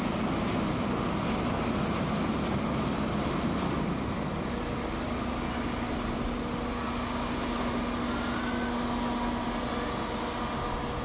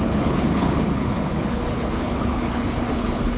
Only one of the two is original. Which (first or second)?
first